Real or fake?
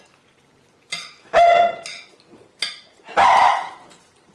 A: fake